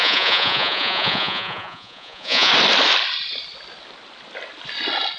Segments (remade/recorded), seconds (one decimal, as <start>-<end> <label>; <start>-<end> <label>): 0.0-2.5 remade; 2.5-5.2 recorded